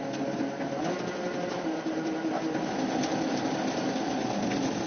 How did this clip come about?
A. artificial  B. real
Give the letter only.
B